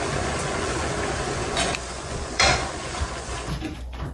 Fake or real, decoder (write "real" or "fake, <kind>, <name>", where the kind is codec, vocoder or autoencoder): fake, vocoder, Vocos